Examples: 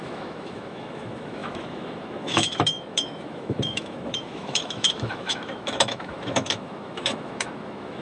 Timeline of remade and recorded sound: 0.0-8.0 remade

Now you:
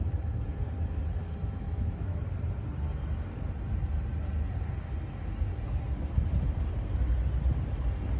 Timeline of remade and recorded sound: 0.0-1.2 recorded; 1.2-2.2 remade; 2.2-8.2 recorded

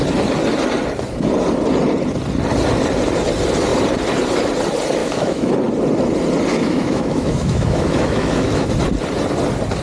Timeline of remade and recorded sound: 0.0-5.0 recorded; 5.0-5.5 remade; 5.5-6.5 recorded; 6.5-8.7 remade; 8.7-9.8 recorded

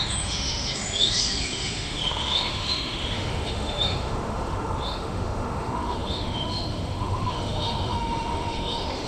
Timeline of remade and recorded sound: 0.0-9.1 remade